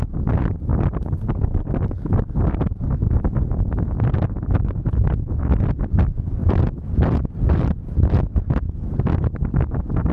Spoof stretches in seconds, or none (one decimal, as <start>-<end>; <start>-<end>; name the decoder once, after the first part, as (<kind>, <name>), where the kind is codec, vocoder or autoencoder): 0.7-1.6 (vocoder, BigVGAN v2); 6.4-7.4

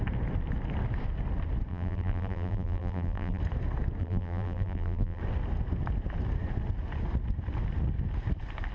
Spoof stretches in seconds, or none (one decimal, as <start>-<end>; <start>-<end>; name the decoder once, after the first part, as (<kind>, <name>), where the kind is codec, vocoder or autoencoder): 1.7-3.4 (vocoder, BigVGAN v2); 4.0-5.2